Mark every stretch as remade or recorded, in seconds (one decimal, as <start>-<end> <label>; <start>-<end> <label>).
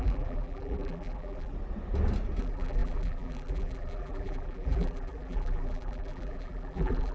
0.0-1.5 remade; 1.5-2.4 recorded; 2.4-7.1 remade